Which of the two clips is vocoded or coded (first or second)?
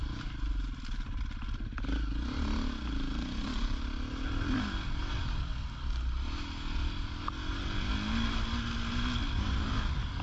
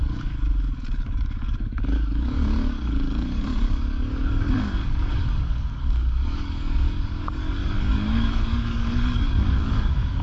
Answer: second